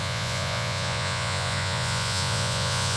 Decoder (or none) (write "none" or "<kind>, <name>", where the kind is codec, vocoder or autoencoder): vocoder, Vocos